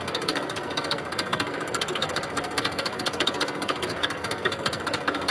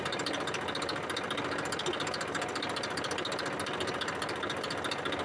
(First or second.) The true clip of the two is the second